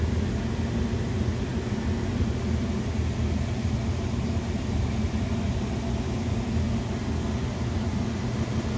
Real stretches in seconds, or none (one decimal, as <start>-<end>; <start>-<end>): 0.0-8.8